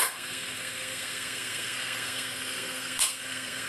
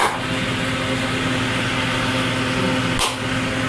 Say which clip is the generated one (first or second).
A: first